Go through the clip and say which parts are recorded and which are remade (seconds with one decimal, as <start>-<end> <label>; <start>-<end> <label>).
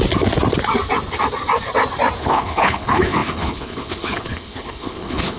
0.0-2.2 recorded; 2.2-5.4 remade